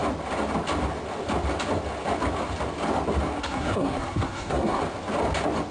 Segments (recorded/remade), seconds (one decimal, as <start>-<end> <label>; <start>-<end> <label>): 0.0-3.4 recorded; 3.4-4.8 remade; 4.8-5.7 recorded